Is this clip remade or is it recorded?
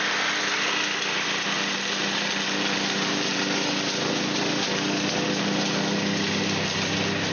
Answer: recorded